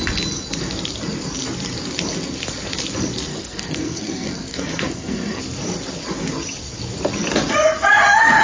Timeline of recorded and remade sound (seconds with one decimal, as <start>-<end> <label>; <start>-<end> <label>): 0.0-3.3 recorded; 3.3-5.4 remade; 5.4-8.4 recorded